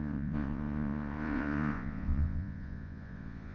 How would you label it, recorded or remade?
remade